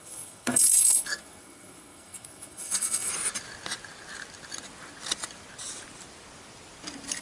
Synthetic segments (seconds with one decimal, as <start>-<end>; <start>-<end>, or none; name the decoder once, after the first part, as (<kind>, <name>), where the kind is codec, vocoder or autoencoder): 0.0-3.1 (codec, SNAC)